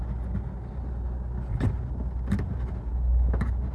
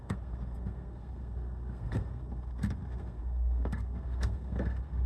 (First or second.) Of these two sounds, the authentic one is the first